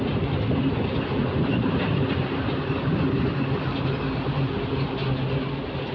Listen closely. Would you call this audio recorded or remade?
recorded